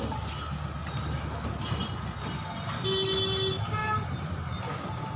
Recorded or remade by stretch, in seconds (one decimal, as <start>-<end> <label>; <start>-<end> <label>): 0.0-3.8 recorded; 3.8-4.6 remade; 4.6-5.2 recorded